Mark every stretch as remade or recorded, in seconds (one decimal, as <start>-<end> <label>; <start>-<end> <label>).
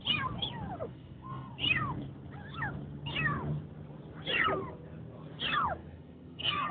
0.0-0.9 recorded; 0.9-1.5 remade; 1.5-5.8 recorded; 5.8-6.7 remade